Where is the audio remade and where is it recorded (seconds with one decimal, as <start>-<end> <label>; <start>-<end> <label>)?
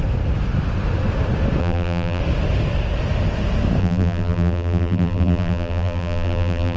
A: 0.0-1.6 recorded; 1.6-2.2 remade; 2.2-3.8 recorded; 3.8-6.8 remade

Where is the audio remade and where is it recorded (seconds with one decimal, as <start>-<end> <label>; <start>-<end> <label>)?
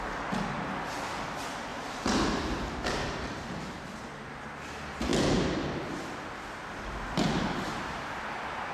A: 0.0-1.7 recorded; 1.7-4.0 remade; 4.0-8.7 recorded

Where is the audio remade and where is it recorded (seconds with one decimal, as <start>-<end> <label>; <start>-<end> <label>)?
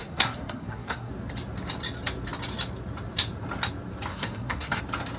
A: 0.0-1.1 remade; 1.1-4.1 recorded; 4.1-4.8 remade; 4.8-5.2 recorded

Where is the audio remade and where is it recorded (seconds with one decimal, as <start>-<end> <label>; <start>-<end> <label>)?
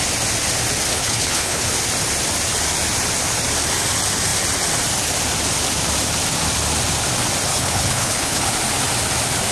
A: 0.0-0.9 recorded; 0.9-1.7 remade; 1.7-7.5 recorded; 7.5-8.4 remade; 8.4-9.5 recorded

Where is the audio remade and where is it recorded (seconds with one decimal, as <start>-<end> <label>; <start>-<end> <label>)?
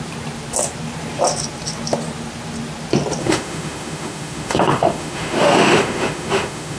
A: 0.0-3.2 recorded; 3.2-6.8 remade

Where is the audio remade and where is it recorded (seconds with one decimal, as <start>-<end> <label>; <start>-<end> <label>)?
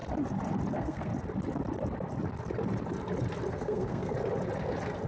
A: 0.0-0.7 recorded; 0.7-1.1 remade; 1.1-3.5 recorded; 3.5-4.1 remade; 4.1-5.1 recorded